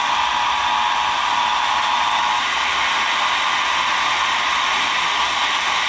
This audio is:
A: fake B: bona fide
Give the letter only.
B